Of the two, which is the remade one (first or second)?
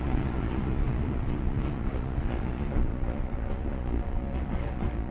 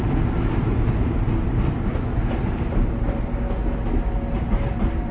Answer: first